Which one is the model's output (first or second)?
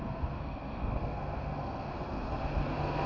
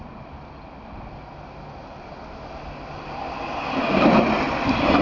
first